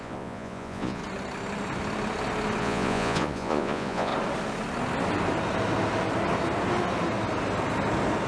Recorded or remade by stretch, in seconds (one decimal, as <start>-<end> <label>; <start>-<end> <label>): 0.0-1.0 remade; 1.0-2.6 recorded; 2.6-4.1 remade; 4.1-8.3 recorded